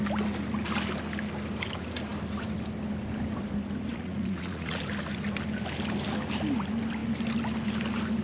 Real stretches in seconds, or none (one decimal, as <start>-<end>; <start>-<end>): 0.0-3.9; 4.8-8.2